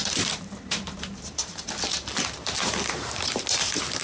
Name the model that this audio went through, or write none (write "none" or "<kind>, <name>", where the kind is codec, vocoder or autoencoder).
vocoder, BigVGAN v2